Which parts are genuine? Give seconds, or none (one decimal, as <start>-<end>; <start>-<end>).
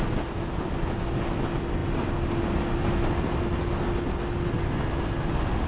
0.0-5.7